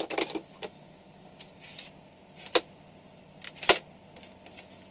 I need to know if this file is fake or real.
real